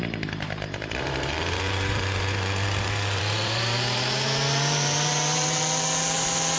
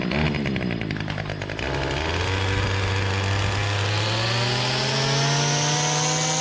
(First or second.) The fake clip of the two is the first